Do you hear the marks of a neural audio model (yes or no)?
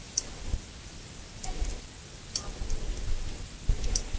no